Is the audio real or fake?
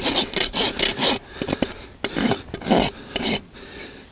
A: real